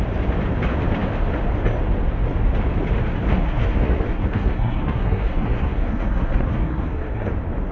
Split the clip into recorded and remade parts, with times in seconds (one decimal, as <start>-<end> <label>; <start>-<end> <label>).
0.0-3.3 recorded; 3.3-7.3 remade; 7.3-7.7 recorded

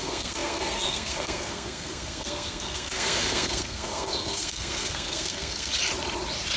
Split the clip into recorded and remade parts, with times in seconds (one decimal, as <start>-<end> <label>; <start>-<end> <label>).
0.0-5.7 remade; 5.7-6.6 recorded

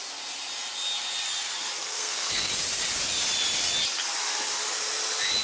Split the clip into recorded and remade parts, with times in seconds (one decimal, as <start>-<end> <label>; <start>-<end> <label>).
0.0-1.8 recorded; 1.8-2.5 remade; 2.5-5.4 recorded

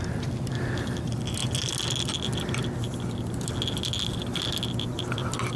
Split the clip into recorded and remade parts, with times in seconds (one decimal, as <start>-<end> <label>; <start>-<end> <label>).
0.0-5.6 recorded

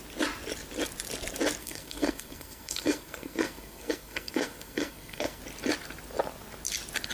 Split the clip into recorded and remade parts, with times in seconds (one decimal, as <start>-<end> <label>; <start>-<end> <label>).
0.0-1.6 recorded; 1.6-5.4 remade; 5.4-7.1 recorded

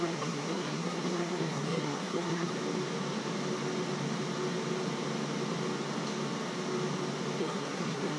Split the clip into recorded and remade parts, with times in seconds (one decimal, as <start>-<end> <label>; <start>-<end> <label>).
0.0-2.5 remade; 2.5-7.4 recorded; 7.4-8.2 remade